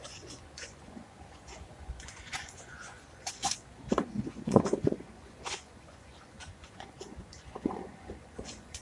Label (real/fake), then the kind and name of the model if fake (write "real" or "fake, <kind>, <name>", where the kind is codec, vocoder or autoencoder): fake, vocoder, Vocos